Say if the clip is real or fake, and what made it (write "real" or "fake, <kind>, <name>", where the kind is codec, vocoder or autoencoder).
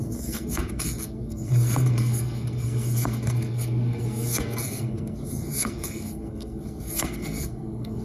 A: fake, codec, SNAC